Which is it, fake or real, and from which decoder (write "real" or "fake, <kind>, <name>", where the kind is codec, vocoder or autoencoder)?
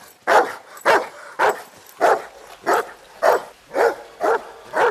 real